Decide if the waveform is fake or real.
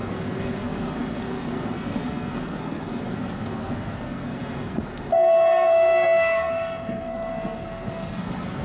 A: fake